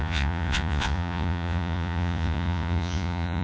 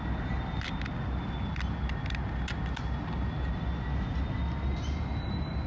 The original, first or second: second